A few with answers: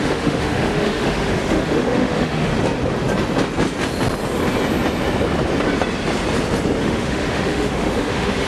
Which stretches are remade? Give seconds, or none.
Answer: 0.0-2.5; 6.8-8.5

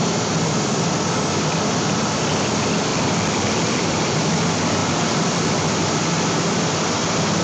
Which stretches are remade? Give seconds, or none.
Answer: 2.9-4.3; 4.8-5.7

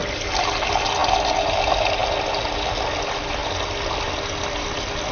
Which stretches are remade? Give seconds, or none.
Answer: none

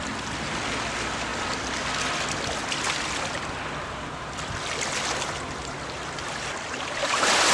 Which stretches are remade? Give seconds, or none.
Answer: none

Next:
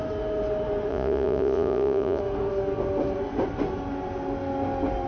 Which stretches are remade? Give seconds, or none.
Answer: 0.9-2.2